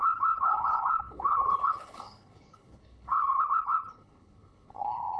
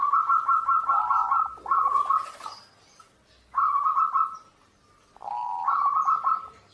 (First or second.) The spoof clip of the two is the first